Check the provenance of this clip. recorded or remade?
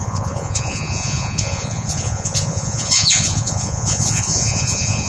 remade